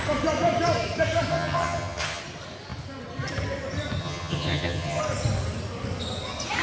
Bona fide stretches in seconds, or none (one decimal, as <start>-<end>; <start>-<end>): 0.0-1.3; 2.2-4.0; 5.0-6.6

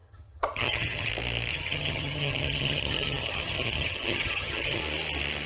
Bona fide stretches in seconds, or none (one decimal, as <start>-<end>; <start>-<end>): 1.1-1.5; 4.8-5.5

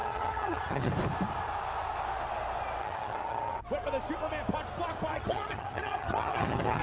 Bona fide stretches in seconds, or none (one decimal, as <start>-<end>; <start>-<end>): 0.9-2.8; 3.6-5.1